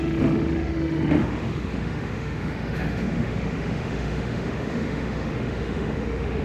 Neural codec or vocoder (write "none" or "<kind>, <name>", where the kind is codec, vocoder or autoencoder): autoencoder, DAC-VAE